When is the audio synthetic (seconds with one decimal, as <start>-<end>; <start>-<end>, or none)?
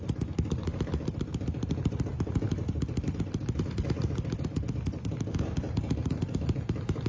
0.0-7.1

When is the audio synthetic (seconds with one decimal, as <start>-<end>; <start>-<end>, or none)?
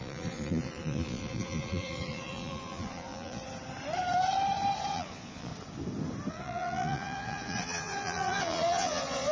0.0-3.4; 4.9-5.5; 6.3-9.3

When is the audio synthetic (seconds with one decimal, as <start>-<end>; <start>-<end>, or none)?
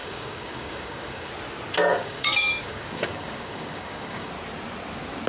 0.0-1.3; 1.9-4.3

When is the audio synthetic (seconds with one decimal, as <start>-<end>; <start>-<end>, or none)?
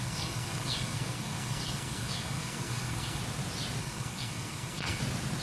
0.0-3.2; 3.8-5.0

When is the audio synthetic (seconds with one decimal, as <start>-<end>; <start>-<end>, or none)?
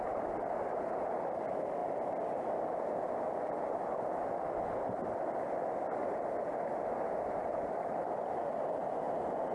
none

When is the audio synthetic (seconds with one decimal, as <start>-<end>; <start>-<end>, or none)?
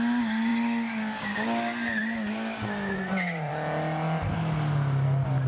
none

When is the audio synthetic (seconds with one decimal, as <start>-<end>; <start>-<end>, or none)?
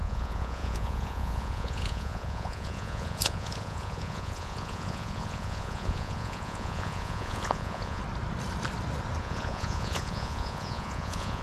0.0-8.0; 9.2-11.4